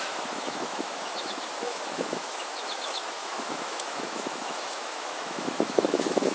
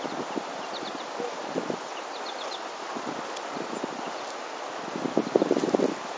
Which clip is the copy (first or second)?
first